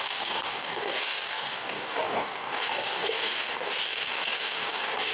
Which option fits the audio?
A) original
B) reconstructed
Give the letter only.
B